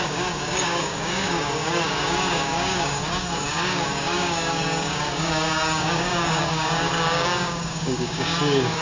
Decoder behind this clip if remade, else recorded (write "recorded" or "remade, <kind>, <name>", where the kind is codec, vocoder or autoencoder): remade, codec, DAC